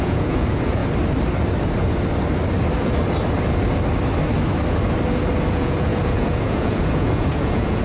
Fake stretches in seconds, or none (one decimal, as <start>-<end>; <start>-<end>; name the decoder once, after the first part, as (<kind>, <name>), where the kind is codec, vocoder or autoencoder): 0.0-0.8 (vocoder, Vocos); 5.5-7.8